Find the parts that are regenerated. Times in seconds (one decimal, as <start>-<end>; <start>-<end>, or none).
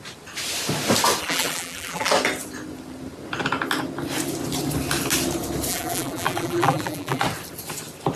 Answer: 1.2-2.1; 5.7-7.2